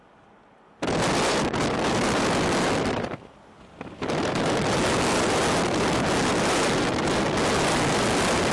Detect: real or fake real